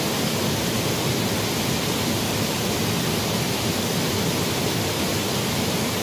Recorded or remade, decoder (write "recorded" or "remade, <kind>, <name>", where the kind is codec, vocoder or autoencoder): recorded